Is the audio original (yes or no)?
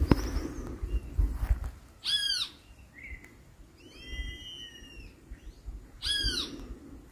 yes